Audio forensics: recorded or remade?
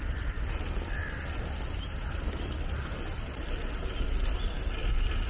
recorded